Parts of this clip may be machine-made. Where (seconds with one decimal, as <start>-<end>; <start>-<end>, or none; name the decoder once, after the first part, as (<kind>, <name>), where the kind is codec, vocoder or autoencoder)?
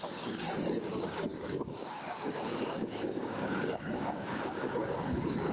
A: 0.0-5.5 (codec, DAC)